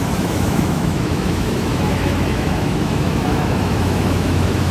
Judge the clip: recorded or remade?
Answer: remade